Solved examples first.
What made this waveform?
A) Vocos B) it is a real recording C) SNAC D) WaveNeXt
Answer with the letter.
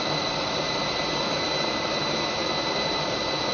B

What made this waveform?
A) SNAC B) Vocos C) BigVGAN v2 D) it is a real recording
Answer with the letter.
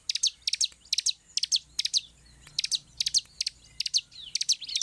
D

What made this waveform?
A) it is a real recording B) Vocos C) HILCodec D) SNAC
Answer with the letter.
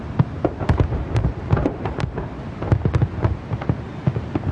A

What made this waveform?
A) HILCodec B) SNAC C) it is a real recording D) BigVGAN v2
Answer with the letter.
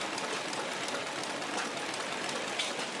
C